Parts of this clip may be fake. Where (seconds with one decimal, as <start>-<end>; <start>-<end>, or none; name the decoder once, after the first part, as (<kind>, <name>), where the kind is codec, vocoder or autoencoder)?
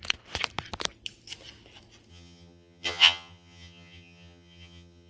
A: 2.1-5.1 (vocoder, HiFi-GAN)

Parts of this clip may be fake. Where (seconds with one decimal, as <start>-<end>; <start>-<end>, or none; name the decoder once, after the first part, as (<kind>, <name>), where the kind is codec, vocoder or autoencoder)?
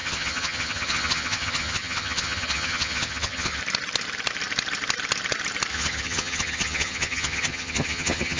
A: 0.0-3.6 (vocoder, HiFi-GAN); 5.7-8.4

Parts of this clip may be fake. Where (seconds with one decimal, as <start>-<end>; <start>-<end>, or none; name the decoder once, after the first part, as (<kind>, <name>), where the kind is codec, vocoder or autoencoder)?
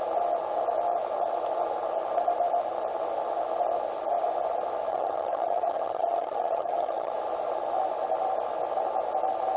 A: 4.9-7.1 (vocoder, HiFi-GAN)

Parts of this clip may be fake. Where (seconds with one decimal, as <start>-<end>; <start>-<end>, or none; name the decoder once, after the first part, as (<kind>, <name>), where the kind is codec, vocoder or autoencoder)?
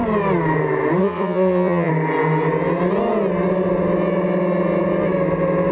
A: 1.0-1.9 (vocoder, HiFi-GAN)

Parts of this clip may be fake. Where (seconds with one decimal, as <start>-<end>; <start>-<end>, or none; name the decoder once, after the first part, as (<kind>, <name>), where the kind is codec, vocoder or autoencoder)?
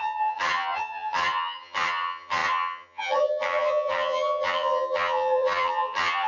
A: 0.0-6.3 (vocoder, HiFi-GAN)